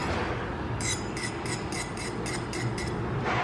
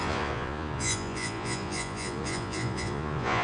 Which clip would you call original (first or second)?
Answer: first